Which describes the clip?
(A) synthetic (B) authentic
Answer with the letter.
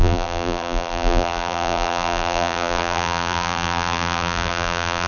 A